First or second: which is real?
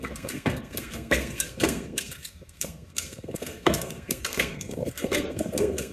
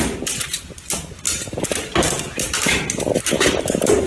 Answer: second